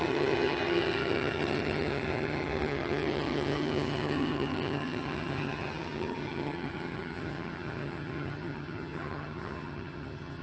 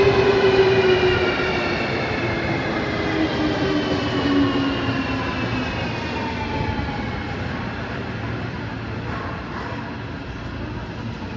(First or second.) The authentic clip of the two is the second